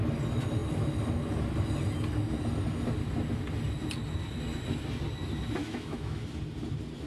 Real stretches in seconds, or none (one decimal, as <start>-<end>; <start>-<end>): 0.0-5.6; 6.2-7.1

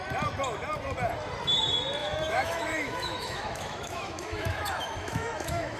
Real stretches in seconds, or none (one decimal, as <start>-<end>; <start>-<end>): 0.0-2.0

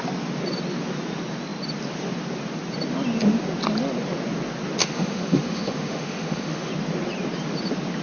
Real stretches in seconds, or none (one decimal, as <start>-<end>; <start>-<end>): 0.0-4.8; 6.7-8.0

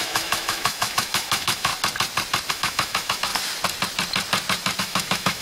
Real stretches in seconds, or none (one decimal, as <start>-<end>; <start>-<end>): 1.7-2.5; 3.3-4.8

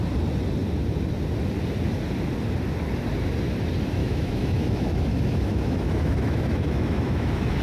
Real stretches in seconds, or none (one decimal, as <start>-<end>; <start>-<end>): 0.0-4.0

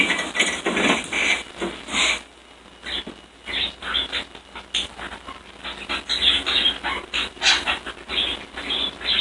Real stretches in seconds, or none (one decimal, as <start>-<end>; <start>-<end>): 0.0-9.2